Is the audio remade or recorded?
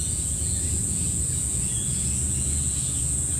remade